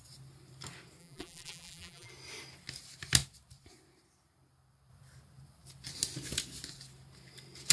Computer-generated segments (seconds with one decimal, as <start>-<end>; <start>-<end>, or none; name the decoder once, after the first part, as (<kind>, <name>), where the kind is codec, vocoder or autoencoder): 1.0-2.1 (vocoder, BigVGAN v2)